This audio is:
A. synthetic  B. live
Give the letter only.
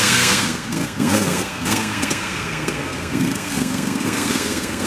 A